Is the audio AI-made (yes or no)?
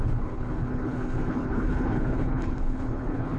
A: yes